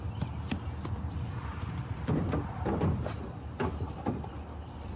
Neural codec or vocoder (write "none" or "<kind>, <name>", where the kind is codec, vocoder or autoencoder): none